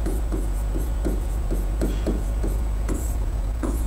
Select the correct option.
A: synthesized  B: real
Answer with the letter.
A